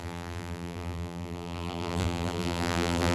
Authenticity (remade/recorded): remade